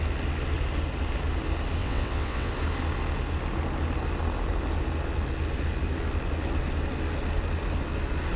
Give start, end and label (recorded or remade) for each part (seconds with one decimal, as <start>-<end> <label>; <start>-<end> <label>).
0.0-1.8 recorded; 1.8-2.5 remade; 2.5-8.4 recorded